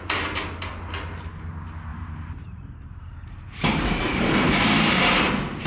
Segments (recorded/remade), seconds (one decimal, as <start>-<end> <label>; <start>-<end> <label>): 0.0-1.9 recorded; 1.9-5.3 remade; 5.3-5.7 recorded